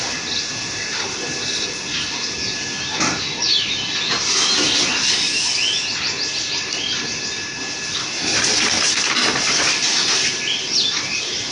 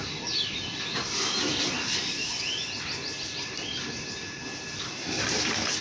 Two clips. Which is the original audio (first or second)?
first